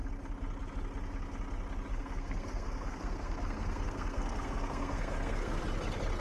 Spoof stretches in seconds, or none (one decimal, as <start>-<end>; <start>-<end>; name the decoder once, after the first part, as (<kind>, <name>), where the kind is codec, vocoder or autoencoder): 1.9-5.6 (codec, SNAC)